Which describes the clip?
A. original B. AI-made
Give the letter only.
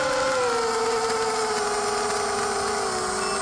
A